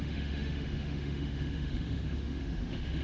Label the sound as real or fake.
fake